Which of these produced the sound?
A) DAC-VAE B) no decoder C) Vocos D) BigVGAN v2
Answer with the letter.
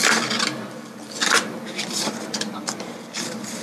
D